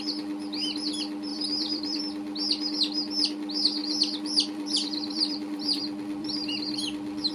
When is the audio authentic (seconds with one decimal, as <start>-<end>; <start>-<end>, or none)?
0.0-1.3; 2.0-3.8; 5.8-6.2